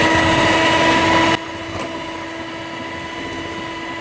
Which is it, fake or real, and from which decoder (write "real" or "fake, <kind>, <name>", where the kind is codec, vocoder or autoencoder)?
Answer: real